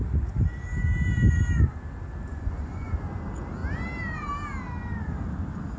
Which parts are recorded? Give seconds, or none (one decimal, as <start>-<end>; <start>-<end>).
0.0-2.3; 2.9-5.8